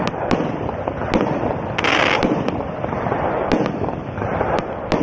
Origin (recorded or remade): recorded